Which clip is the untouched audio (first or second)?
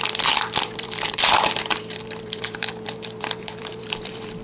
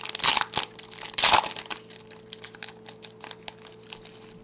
second